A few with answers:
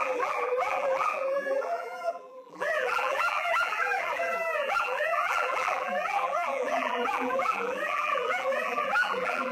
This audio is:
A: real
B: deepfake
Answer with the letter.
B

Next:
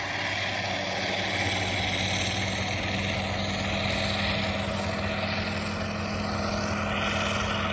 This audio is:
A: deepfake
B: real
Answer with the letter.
B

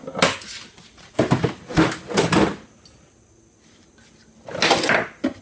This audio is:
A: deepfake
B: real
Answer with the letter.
B